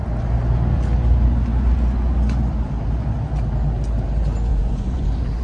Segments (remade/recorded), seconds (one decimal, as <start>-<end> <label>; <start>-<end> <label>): 0.0-4.5 recorded; 4.5-5.4 remade